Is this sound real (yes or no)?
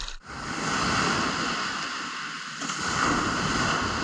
yes